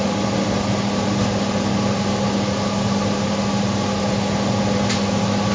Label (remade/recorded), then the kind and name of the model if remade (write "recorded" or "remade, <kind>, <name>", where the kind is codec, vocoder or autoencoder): recorded